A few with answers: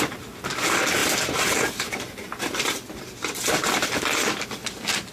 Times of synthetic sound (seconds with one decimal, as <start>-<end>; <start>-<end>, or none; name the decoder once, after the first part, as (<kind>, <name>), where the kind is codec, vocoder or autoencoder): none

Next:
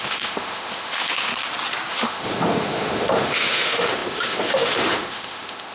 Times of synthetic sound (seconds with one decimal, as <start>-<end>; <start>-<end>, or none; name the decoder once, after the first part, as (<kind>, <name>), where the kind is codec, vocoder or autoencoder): 0.0-1.3 (autoencoder, DAC-VAE); 1.9-5.7

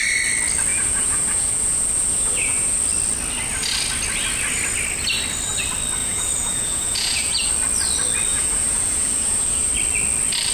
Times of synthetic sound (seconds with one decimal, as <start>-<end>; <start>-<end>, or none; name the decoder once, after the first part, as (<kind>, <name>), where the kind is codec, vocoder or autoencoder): 0.7-2.8 (vocoder, Vocos); 6.0-7.5; 8.3-9.7

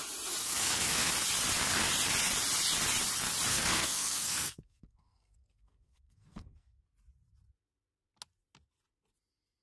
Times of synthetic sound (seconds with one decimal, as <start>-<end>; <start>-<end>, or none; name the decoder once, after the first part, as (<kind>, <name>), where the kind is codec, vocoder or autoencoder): 0.4-1.1 (codec, SNAC); 3.5-6.8

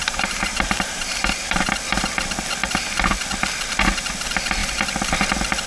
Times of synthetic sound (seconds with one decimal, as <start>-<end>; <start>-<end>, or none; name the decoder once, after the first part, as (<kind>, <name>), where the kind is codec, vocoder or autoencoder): 0.0-1.7 (vocoder, BigVGAN v2)

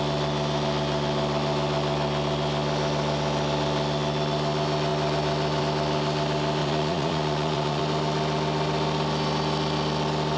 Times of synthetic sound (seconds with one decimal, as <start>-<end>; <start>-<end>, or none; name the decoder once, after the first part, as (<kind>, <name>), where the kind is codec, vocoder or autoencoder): 6.6-7.8 (vocoder, Vocos)